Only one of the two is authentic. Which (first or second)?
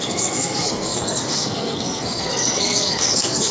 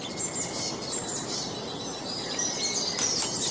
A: second